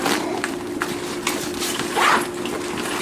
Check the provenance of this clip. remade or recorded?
recorded